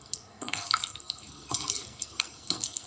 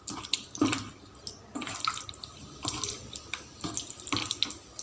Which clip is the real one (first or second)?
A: second